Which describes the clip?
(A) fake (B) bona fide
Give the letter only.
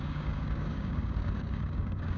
A